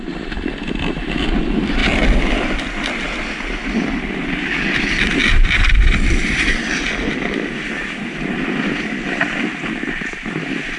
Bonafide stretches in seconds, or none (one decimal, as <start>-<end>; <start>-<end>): 0.0-10.8